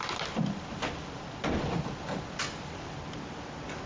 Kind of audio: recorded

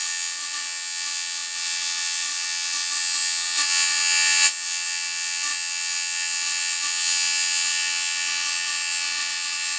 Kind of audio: remade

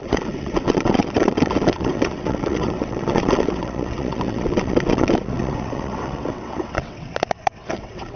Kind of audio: remade